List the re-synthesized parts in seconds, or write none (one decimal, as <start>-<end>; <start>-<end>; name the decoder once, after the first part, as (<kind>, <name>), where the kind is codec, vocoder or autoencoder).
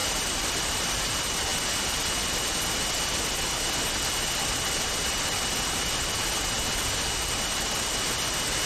0.0-1.1 (vocoder, BigVGAN v2)